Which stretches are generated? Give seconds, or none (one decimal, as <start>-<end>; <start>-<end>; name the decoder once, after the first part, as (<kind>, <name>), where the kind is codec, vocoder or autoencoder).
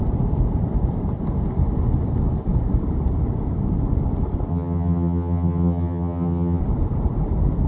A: 4.5-6.6 (vocoder, HiFi-GAN)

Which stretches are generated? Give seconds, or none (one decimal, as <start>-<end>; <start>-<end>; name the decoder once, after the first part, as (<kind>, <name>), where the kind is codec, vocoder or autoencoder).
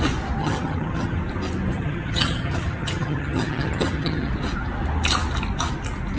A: 0.4-1.2 (vocoder, HiFi-GAN); 1.7-4.3